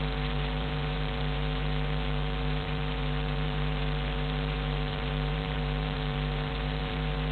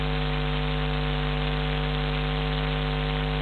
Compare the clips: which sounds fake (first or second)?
first